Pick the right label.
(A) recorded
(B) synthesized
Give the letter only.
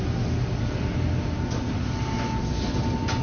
A